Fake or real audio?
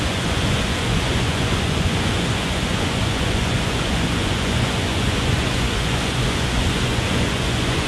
fake